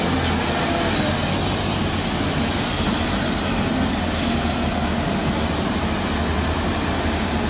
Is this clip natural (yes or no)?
yes